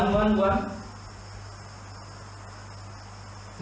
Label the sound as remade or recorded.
recorded